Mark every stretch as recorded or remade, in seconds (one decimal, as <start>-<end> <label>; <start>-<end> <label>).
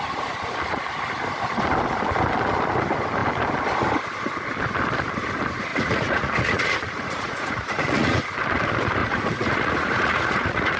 0.0-5.7 recorded; 5.7-8.2 remade; 8.2-9.0 recorded; 9.0-10.8 remade